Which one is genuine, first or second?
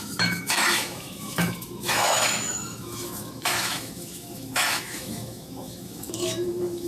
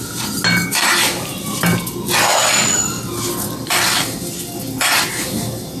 second